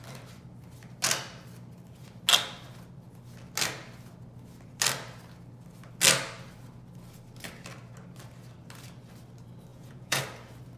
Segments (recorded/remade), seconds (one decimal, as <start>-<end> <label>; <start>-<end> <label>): 0.0-9.7 recorded; 9.7-10.2 remade; 10.2-10.8 recorded